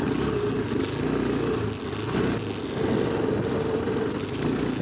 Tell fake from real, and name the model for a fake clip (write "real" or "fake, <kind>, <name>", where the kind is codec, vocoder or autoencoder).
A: real